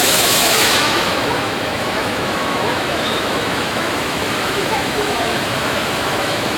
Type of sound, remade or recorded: remade